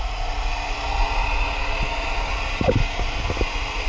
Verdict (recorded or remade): recorded